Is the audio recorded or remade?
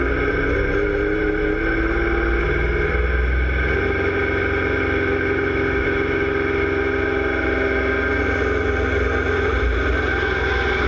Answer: recorded